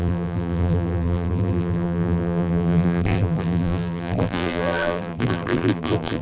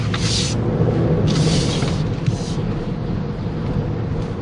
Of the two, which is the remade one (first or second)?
first